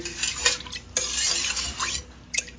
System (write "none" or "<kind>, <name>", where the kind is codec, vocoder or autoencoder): none